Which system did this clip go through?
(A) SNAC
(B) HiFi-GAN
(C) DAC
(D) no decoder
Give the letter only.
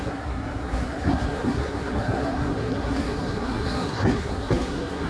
A